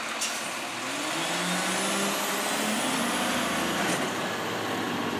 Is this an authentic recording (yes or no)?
yes